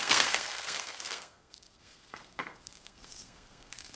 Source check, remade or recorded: remade